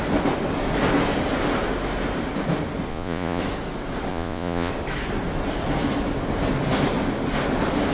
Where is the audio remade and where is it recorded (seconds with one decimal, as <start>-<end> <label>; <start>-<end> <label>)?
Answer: 0.0-2.9 recorded; 2.9-3.4 remade; 3.4-4.1 recorded; 4.1-4.7 remade; 4.7-7.9 recorded